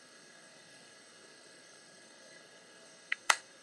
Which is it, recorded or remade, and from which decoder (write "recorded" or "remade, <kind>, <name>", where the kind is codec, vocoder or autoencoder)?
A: remade, codec, SNAC